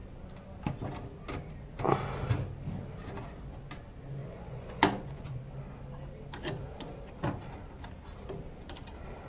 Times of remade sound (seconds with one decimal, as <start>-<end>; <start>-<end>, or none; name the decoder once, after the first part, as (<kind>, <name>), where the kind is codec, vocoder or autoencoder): 4.2-5.4 (vocoder, Vocos)